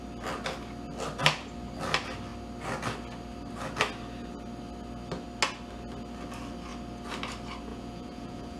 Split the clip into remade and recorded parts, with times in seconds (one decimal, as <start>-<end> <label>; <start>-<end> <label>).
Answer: 0.0-7.7 recorded; 7.7-8.6 remade